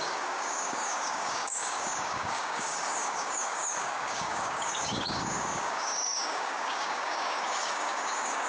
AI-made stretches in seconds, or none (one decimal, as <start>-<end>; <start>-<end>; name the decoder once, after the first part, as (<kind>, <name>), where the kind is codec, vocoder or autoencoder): 0.0-8.5 (codec, DAC)